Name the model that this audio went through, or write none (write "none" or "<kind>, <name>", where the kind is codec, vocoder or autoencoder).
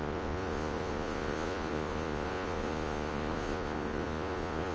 vocoder, Vocos